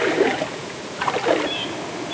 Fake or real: fake